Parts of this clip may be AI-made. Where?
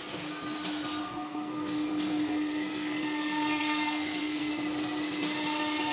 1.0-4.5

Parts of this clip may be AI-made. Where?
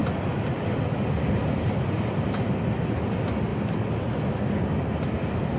none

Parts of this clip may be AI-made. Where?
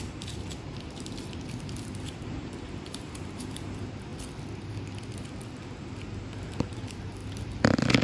0.0-4.1; 6.7-7.2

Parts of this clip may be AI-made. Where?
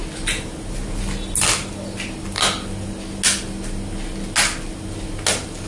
none